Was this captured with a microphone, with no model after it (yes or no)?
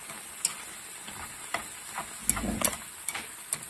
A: yes